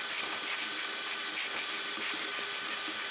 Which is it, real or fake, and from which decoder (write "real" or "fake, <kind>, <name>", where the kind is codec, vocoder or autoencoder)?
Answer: real